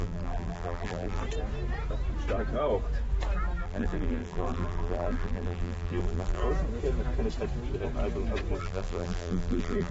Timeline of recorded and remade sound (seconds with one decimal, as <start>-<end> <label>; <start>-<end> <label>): 0.0-1.2 remade; 1.2-3.6 recorded; 3.6-6.4 remade; 6.4-8.6 recorded; 8.6-9.9 remade